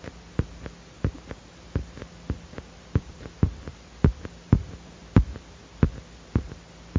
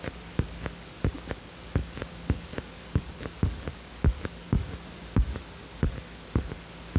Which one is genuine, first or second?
first